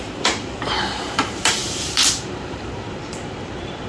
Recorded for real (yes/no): no